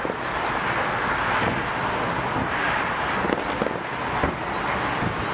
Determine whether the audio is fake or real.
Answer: real